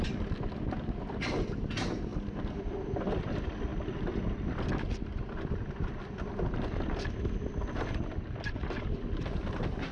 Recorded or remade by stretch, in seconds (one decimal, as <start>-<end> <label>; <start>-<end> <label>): 0.0-9.9 recorded